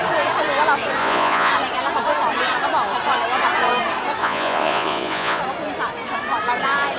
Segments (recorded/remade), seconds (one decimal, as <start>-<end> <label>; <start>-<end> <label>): 0.0-1.0 recorded; 1.0-1.5 remade; 1.5-4.2 recorded; 4.2-5.4 remade; 5.4-7.0 recorded